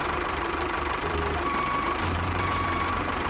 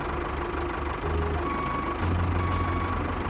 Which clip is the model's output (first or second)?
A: first